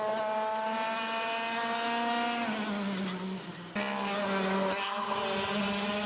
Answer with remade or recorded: recorded